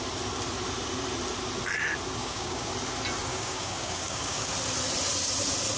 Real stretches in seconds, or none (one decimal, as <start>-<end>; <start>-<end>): 0.0-2.2; 2.7-3.3; 4.5-5.8